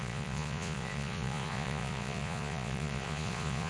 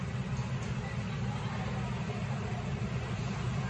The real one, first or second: second